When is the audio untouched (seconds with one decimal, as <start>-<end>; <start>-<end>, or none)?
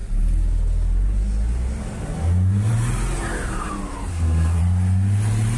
0.0-4.1; 4.6-5.6